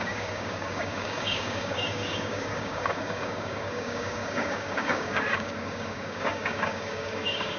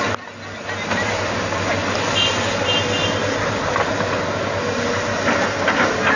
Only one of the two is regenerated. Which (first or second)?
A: first